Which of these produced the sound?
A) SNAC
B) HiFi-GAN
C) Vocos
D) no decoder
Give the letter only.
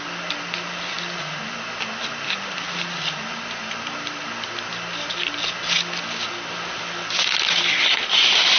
D